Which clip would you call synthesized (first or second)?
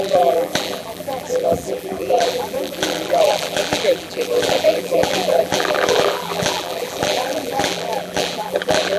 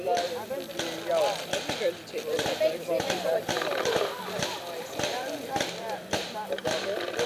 first